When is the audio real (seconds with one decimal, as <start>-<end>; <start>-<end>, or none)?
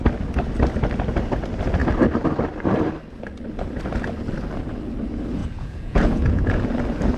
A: 0.0-5.4; 6.7-7.2